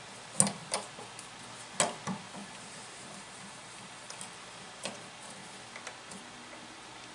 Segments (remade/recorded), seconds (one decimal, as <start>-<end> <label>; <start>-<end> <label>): 0.0-2.4 recorded; 2.4-4.2 remade; 4.2-7.1 recorded